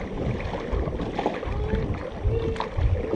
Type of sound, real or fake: real